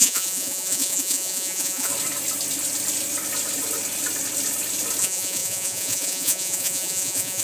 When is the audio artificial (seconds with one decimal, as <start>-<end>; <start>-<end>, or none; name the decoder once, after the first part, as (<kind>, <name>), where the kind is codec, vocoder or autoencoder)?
0.0-1.9 (vocoder, Vocos); 5.0-7.4

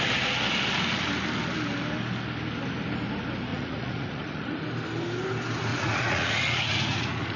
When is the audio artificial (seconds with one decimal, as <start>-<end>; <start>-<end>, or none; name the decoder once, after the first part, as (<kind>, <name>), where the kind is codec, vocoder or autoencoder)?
3.5-4.6 (vocoder, Vocos); 5.7-7.4

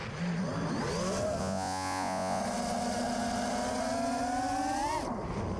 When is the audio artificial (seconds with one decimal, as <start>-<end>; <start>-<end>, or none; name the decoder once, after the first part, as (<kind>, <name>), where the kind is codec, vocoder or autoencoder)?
1.4-2.4 (vocoder, Vocos)